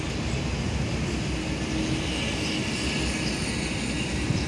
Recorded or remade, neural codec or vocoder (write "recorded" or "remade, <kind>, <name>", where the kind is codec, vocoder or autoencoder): recorded